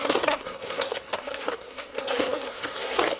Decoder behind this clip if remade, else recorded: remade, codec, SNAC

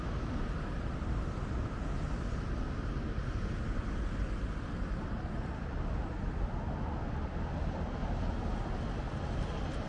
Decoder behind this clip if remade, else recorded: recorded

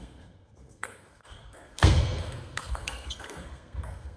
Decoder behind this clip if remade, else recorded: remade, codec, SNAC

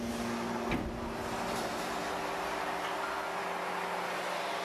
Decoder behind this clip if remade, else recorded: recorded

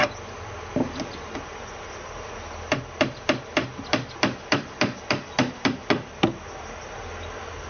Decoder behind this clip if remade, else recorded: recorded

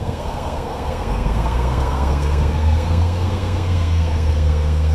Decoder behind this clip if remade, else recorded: remade, codec, SNAC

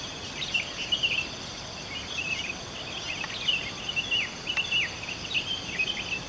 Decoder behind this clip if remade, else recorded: recorded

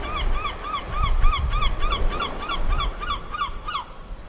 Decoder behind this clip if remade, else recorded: recorded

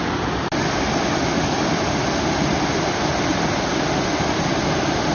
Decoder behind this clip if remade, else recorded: recorded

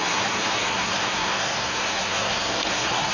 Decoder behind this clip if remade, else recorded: remade, codec, SNAC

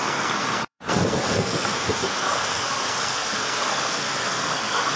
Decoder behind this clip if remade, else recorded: remade, codec, SNAC